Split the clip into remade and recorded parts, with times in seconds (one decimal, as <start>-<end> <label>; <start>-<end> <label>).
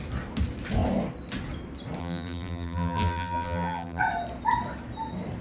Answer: 0.0-2.0 recorded; 2.0-4.0 remade; 4.0-5.4 recorded